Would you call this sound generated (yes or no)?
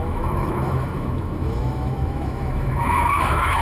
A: yes